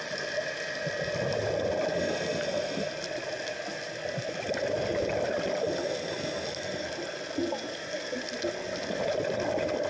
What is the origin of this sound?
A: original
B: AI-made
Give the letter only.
A